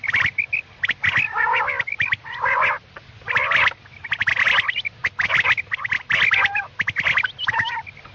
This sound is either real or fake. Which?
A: real